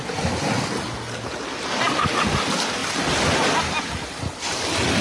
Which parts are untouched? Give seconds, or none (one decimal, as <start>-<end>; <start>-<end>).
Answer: 0.0-5.0